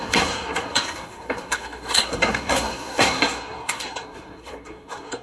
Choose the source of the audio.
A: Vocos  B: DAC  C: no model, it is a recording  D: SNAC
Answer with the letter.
D